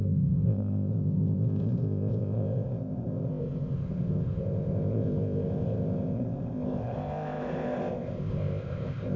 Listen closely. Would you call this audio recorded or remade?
remade